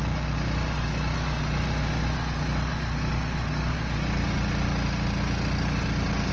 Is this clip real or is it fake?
real